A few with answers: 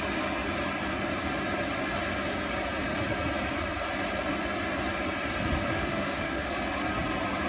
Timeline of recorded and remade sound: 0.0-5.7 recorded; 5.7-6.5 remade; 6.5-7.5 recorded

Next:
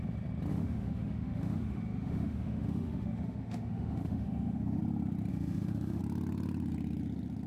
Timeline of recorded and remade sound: 0.0-0.5 recorded; 0.5-4.8 remade; 4.8-5.3 recorded; 5.3-6.0 remade; 6.0-7.5 recorded